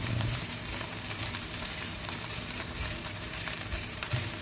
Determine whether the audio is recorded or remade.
remade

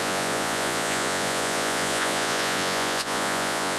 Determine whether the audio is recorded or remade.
remade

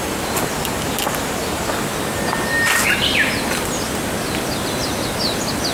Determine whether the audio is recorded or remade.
recorded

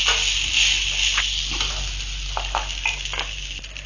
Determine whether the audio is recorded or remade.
recorded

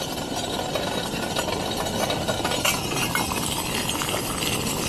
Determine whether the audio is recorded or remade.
recorded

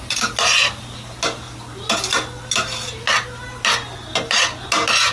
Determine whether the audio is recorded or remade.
recorded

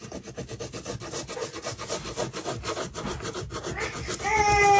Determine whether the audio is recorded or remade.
recorded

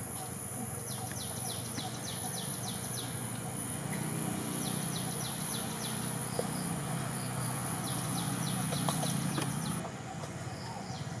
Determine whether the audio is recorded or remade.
remade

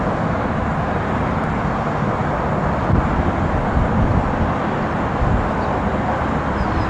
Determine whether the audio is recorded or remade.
recorded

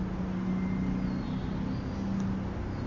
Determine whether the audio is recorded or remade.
recorded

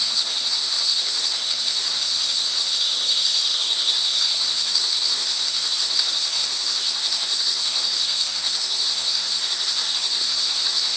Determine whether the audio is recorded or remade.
remade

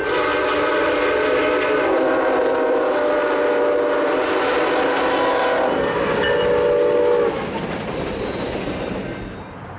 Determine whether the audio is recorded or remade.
recorded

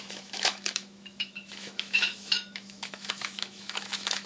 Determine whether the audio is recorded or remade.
remade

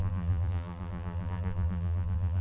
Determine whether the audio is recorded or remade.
remade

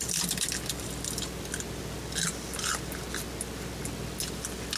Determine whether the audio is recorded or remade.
recorded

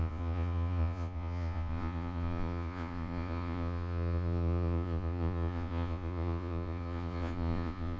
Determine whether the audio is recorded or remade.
remade